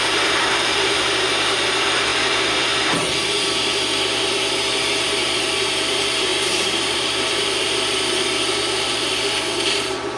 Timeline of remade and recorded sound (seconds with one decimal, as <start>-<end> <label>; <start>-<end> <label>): 0.0-2.1 remade; 2.1-2.7 recorded; 2.7-10.2 remade